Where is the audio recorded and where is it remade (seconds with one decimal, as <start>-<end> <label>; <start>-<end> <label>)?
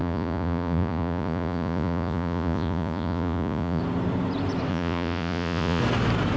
0.0-3.8 remade; 3.8-4.7 recorded; 4.7-5.8 remade; 5.8-6.4 recorded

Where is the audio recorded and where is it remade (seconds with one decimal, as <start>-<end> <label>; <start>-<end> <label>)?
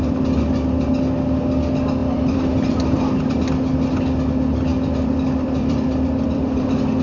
0.0-2.0 recorded; 2.0-2.7 remade; 2.7-4.7 recorded; 4.7-6.6 remade; 6.6-7.0 recorded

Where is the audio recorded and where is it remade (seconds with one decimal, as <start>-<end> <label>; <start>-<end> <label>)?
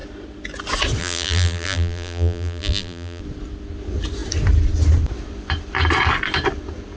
0.0-1.0 recorded; 1.0-3.2 remade; 3.2-7.0 recorded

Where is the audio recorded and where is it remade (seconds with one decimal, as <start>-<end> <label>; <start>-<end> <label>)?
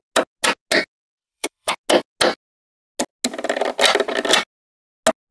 0.0-1.2 recorded; 1.2-1.7 remade; 1.7-5.3 recorded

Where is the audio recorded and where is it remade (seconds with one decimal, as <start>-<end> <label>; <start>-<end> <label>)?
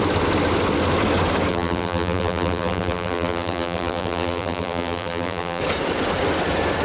0.0-1.5 recorded; 1.5-5.6 remade; 5.6-6.8 recorded